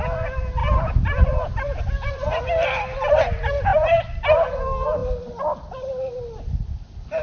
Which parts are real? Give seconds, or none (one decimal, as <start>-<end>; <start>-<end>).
0.0-3.7; 4.5-7.2